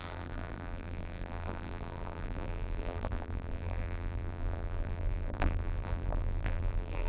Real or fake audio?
fake